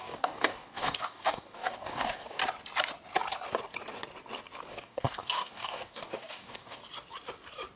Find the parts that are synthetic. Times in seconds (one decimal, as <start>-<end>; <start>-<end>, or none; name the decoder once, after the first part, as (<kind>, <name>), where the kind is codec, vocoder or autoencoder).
0.0-2.4 (codec, DAC); 4.7-6.8